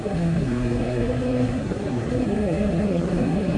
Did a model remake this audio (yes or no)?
yes